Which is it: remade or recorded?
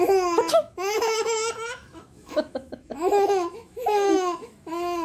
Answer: remade